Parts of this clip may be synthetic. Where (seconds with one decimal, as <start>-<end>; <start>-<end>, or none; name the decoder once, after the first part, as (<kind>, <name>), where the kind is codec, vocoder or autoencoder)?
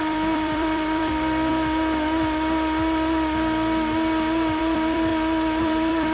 0.0-1.5 (vocoder, BigVGAN v2); 4.6-5.1; 5.6-6.1